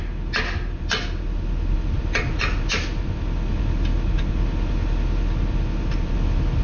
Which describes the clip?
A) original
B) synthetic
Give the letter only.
A